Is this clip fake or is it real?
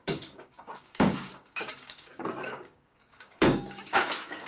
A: fake